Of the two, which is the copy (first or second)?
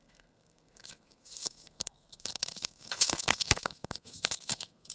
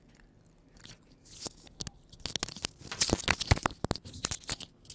first